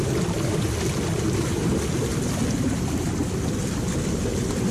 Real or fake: real